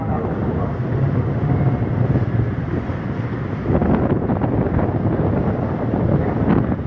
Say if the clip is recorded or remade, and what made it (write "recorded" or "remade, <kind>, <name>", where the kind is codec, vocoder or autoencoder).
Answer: recorded